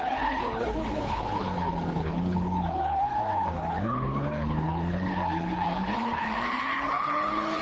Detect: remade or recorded remade